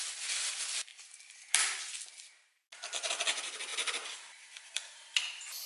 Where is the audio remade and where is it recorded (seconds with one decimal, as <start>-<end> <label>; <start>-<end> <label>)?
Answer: 0.0-5.7 recorded